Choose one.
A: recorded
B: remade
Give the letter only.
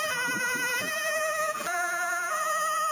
B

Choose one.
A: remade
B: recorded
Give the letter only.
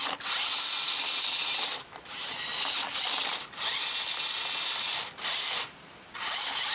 B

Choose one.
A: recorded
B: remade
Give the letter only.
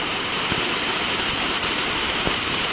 B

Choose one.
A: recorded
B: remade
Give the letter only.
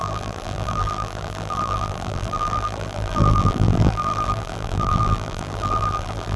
B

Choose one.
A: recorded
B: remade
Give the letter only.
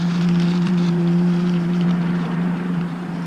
B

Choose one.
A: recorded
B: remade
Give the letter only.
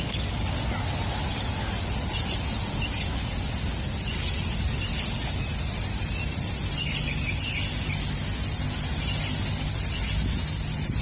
A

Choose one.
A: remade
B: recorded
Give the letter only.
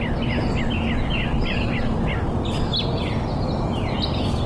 B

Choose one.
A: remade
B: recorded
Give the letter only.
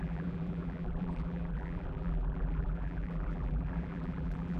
A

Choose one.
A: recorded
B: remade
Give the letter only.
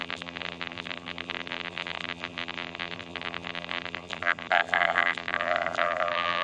B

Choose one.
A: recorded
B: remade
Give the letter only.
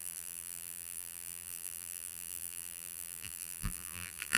B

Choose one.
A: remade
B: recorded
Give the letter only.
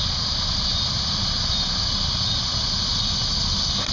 B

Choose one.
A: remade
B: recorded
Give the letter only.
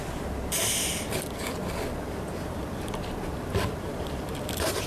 A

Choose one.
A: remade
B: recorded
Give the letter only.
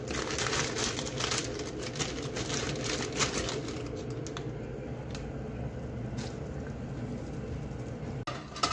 B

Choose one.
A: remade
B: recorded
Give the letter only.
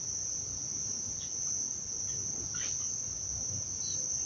B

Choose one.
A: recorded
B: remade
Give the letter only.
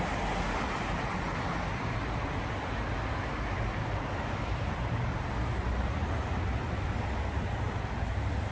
A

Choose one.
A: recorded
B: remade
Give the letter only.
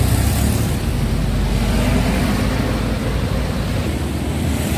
A